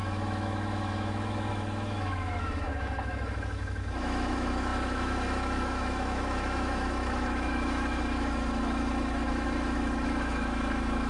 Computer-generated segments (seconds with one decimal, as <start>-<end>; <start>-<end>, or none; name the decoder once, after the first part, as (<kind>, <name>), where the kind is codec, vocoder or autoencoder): 0.0-11.1 (autoencoder, DAC-VAE)